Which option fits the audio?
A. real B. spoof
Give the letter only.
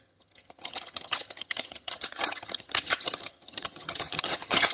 B